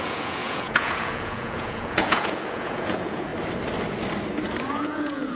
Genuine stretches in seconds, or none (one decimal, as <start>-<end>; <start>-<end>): 3.3-4.7